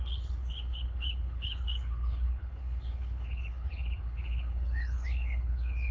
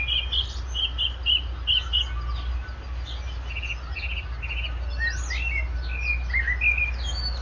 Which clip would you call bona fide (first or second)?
second